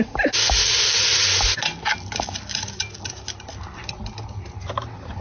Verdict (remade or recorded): recorded